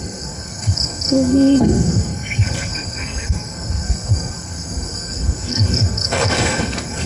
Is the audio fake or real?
fake